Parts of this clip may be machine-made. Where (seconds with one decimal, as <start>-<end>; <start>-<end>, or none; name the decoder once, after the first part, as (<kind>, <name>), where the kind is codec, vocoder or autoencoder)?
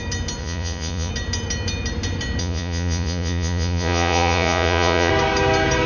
0.4-1.1 (vocoder, Vocos); 2.4-5.1